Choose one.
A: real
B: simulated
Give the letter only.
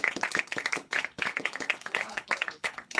B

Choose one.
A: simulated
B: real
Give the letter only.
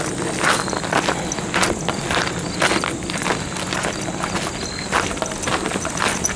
B